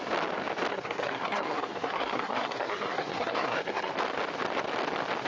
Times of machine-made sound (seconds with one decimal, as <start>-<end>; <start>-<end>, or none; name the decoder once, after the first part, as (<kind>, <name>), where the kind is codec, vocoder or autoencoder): 0.7-3.9 (codec, SNAC)